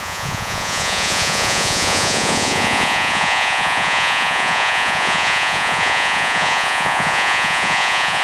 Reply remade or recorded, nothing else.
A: remade